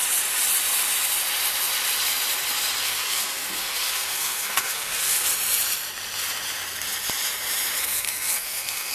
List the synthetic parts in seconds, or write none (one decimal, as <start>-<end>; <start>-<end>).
2.8-5.3; 7.8-8.9